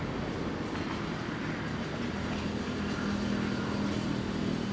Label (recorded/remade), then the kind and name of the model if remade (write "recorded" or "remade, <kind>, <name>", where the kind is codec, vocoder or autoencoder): recorded